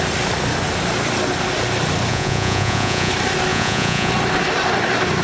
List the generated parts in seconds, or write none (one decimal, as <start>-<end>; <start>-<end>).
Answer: 2.1-3.1; 3.5-4.1